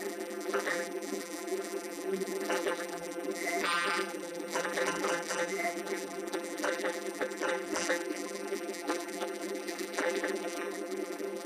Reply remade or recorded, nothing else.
remade